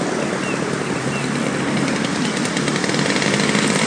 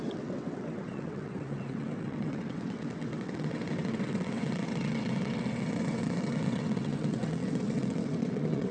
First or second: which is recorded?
first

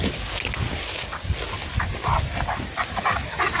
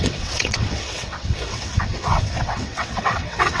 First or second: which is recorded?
first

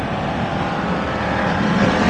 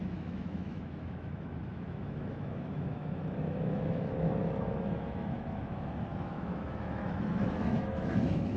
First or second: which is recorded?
first